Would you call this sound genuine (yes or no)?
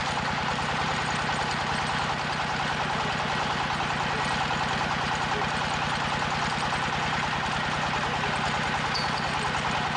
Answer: yes